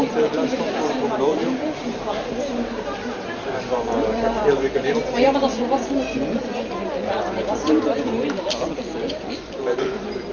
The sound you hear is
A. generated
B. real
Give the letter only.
A